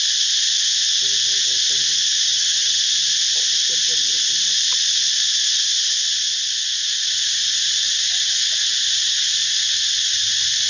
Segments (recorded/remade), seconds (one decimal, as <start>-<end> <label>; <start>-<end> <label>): 0.0-2.3 recorded; 2.3-2.8 remade; 2.8-10.7 recorded